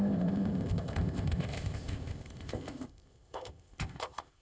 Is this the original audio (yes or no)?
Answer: no